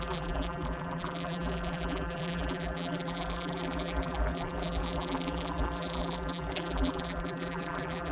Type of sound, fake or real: fake